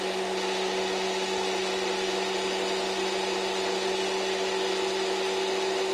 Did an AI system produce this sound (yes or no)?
no